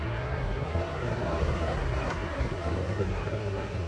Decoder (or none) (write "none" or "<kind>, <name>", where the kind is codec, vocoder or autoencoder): codec, SNAC